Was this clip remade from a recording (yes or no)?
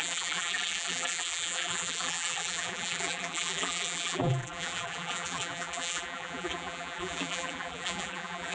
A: yes